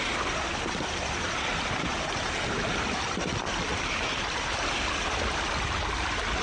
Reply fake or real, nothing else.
real